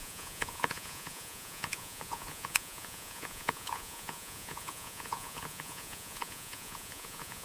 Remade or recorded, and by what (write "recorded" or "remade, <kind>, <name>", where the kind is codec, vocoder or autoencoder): remade, vocoder, Vocos